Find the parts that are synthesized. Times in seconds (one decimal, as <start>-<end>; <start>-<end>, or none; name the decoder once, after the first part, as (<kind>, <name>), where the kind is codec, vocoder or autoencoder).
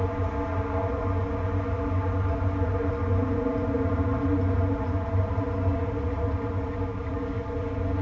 6.9-7.4 (codec, DAC)